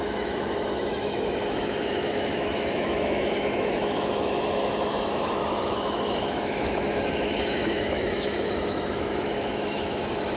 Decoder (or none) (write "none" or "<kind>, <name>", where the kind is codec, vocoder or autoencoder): autoencoder, DAC-VAE